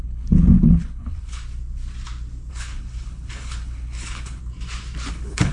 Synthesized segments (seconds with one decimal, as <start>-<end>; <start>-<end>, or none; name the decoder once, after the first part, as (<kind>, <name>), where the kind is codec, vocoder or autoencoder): 0.0-1.4 (codec, HILCodec); 2.5-4.4; 5.1-5.5